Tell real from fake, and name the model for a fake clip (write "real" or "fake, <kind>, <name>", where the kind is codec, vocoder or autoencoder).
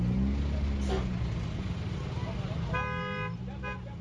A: real